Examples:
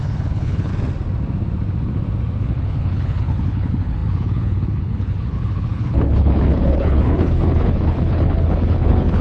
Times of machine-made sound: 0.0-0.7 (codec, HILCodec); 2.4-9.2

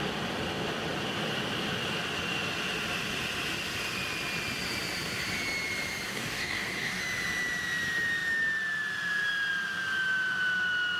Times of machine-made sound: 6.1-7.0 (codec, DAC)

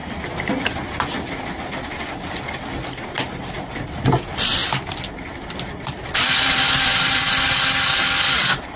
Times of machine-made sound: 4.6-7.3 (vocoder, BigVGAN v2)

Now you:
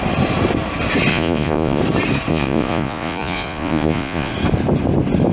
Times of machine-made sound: 1.1-1.8 (vocoder, Vocos); 2.3-4.3